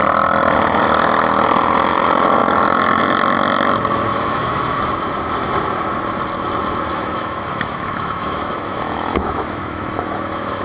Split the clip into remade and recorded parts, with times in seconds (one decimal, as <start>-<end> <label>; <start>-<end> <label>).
0.0-4.1 recorded; 4.1-4.8 remade; 4.8-6.9 recorded; 6.9-10.6 remade